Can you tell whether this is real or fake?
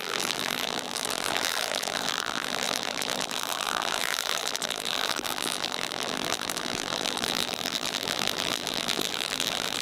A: fake